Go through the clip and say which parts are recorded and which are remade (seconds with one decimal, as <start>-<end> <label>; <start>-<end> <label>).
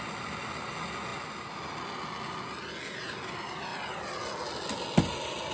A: 0.0-5.5 recorded